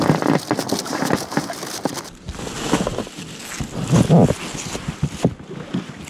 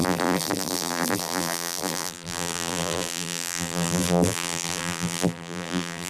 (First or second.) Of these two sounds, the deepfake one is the second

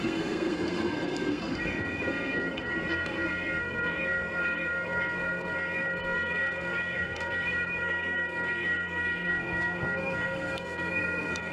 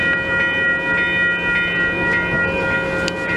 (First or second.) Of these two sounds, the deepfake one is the first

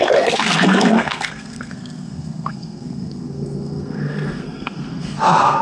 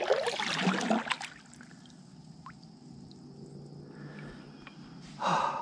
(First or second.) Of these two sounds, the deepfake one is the first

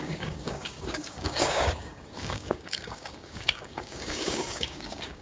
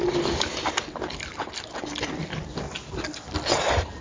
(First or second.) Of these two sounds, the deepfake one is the first